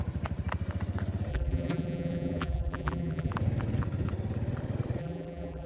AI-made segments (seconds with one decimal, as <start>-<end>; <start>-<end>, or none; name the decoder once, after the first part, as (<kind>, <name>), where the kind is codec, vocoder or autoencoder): 1.3-3.3 (vocoder, BigVGAN v2); 5.0-5.7